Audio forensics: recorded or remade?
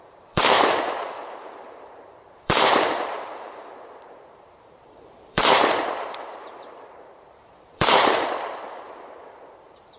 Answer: remade